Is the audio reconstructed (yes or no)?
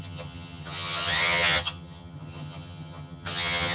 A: yes